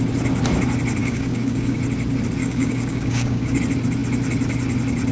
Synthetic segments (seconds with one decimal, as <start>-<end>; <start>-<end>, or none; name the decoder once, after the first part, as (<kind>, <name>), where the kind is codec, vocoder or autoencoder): 1.0-1.8 (codec, DAC); 2.4-3.6